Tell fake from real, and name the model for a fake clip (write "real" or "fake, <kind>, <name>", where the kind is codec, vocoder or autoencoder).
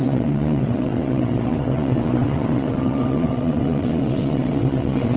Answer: fake, vocoder, WaveNeXt